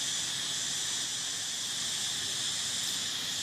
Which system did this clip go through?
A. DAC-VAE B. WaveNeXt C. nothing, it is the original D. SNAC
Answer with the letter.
C